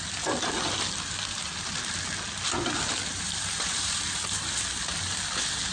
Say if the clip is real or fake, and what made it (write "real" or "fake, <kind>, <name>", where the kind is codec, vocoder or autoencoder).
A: real